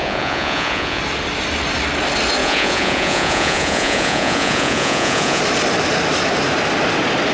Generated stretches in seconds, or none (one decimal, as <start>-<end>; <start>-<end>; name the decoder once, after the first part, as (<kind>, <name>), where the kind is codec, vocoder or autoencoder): 0.0-1.0 (vocoder, Vocos); 2.4-5.4